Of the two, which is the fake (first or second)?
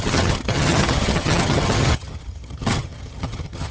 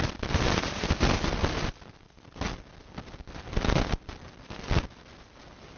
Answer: first